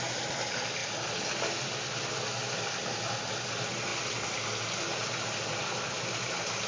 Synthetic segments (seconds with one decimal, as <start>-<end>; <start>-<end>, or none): none